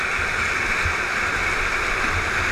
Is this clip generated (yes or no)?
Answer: no